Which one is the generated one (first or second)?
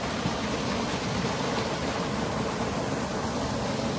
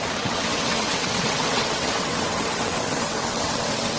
second